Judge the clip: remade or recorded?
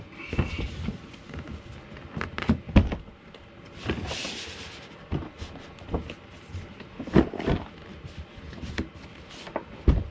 recorded